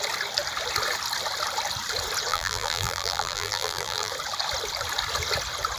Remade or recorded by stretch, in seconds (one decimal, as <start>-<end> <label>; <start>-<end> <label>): 0.0-2.3 recorded; 2.3-4.1 remade; 4.1-5.8 recorded